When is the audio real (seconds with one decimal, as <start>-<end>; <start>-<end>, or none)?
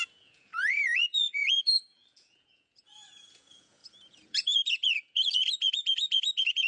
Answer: none